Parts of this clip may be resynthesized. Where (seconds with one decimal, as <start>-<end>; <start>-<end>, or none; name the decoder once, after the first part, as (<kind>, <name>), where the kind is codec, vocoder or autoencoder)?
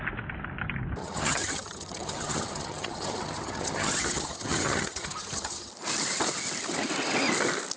1.0-5.7 (vocoder, HiFi-GAN)